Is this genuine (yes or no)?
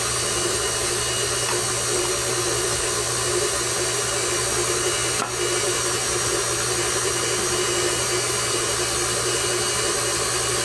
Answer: yes